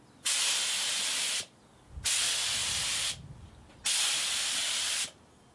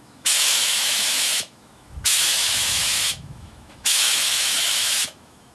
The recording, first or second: first